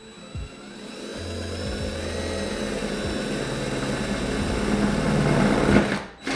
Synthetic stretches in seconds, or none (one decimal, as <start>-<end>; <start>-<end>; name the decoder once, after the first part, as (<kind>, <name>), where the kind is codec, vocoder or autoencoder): none